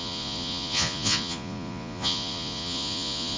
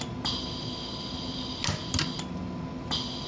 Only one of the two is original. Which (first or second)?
second